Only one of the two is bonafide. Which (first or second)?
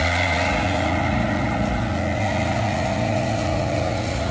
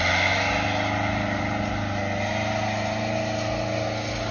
second